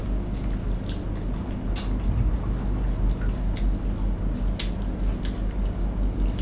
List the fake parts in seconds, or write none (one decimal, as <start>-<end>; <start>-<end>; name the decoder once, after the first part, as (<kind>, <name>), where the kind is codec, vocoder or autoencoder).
none